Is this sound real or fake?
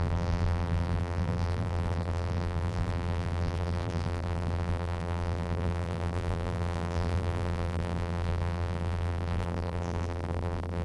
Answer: fake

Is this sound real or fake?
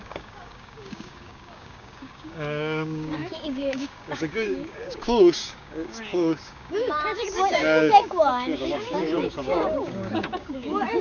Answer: fake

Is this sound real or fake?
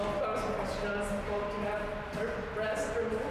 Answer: real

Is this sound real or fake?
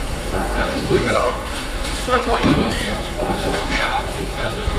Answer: fake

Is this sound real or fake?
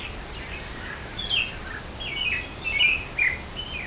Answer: real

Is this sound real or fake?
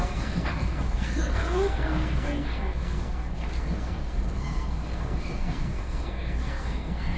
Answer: fake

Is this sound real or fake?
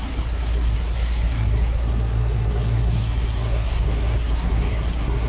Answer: fake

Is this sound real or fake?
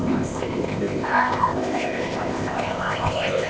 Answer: fake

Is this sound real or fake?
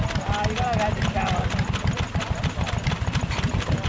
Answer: real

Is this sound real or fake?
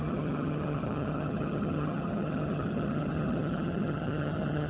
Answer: fake